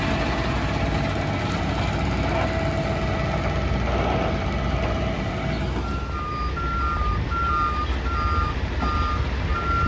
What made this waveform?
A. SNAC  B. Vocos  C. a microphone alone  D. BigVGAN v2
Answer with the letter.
C